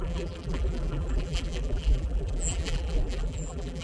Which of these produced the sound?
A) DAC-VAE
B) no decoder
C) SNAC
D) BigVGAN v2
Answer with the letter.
D